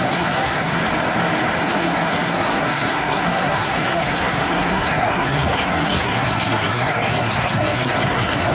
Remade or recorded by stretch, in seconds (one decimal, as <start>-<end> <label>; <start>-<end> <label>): 0.0-0.8 remade; 0.8-1.6 recorded; 1.6-8.5 remade